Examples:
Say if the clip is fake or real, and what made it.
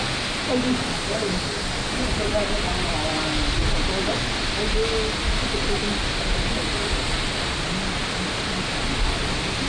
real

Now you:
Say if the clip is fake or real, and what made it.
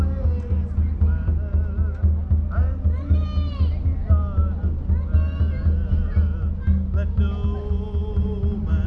real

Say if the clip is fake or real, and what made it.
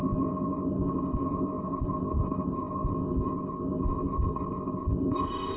fake, codec, ZipCodec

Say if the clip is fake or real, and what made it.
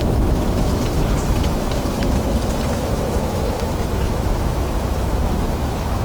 fake, autoencoder, DAC-VAE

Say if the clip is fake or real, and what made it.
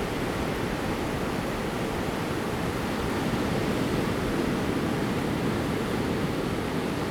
real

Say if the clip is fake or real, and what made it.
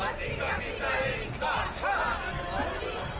real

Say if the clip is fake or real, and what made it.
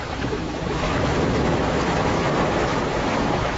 fake, autoencoder, DAC-VAE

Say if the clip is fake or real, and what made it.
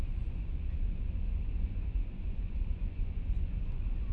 fake, vocoder, Vocos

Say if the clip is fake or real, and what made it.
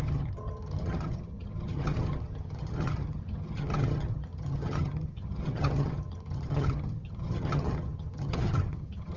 fake, vocoder, HiFi-GAN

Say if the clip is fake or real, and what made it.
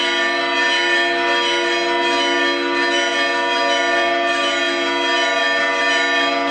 real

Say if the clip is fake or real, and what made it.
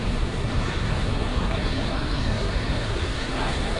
fake, codec, SNAC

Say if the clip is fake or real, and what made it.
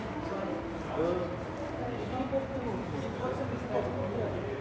real